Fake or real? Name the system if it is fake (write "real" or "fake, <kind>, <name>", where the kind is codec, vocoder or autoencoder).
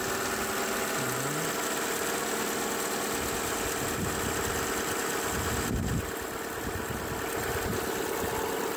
real